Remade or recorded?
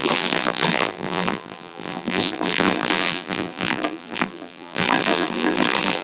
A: remade